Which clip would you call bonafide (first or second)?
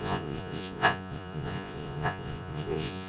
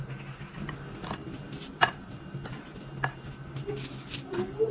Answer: second